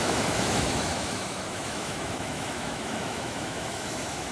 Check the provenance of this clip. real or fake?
fake